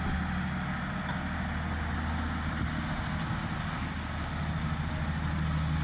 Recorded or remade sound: recorded